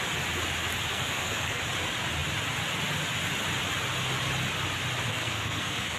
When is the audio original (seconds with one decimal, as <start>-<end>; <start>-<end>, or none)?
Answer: 0.0-0.9; 1.6-5.1